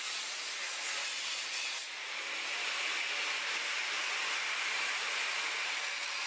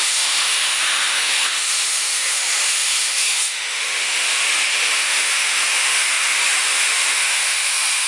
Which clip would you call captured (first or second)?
first